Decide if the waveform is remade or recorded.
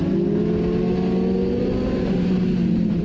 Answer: recorded